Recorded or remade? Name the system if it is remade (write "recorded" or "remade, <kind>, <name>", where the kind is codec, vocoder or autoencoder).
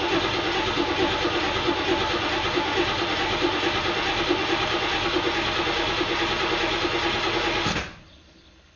recorded